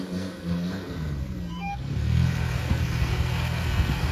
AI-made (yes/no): yes